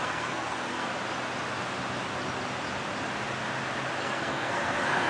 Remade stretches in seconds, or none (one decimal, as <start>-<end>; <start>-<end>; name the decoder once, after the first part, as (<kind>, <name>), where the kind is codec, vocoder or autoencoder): 0.0-0.9 (codec, SNAC); 4.0-5.1